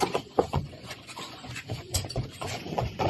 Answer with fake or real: fake